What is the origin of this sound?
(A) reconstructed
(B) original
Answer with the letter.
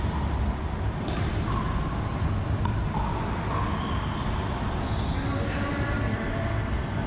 B